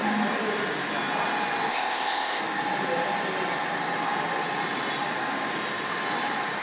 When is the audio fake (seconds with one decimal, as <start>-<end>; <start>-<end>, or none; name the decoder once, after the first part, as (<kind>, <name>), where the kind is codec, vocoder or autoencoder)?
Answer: 1.7-2.4 (codec, ZipCodec)